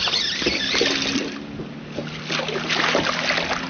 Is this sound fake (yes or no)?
no